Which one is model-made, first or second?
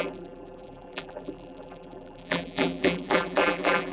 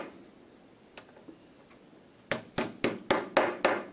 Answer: first